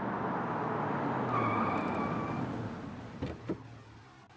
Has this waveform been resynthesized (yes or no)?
no